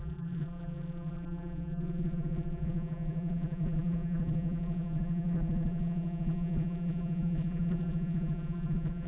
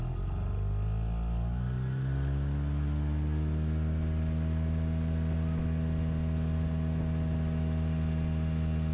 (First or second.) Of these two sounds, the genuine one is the second